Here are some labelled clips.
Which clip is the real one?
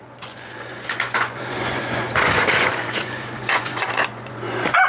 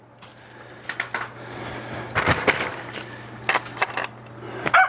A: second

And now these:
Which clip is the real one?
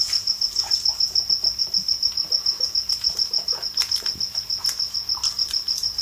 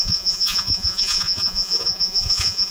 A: first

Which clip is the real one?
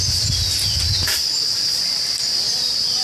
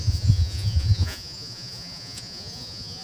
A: first